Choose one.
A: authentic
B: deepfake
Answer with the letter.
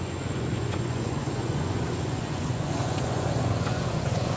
B